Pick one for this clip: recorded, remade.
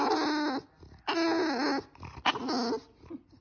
recorded